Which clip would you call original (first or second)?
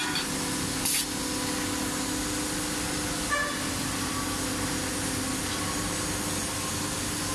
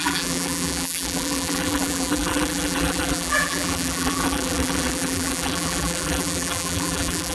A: first